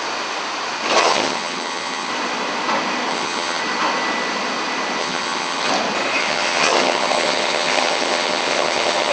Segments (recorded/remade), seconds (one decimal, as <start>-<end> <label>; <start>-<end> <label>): 0.0-1.0 recorded; 1.0-2.1 remade; 2.1-3.1 recorded; 3.1-3.6 remade; 3.6-5.0 recorded; 5.0-5.7 remade; 5.7-6.2 recorded; 6.2-9.1 remade